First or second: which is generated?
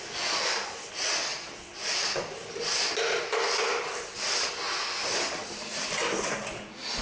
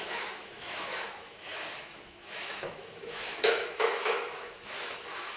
second